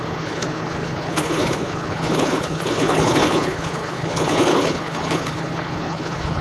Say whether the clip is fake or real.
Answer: fake